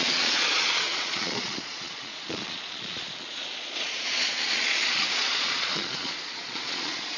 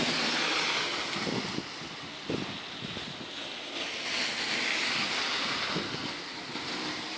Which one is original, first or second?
second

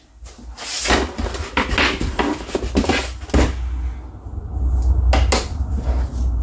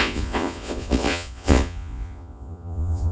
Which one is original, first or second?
first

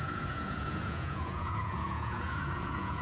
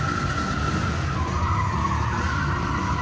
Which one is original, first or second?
second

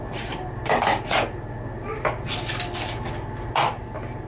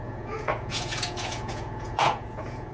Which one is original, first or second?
first